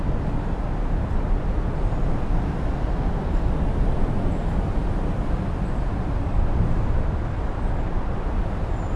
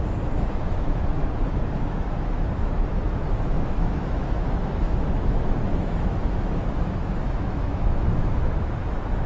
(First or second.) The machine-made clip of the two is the second